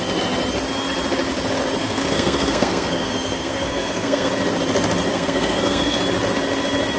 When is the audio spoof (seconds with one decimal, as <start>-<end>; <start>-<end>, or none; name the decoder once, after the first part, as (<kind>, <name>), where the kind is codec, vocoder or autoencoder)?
1.8-4.3 (codec, SNAC); 5.1-6.0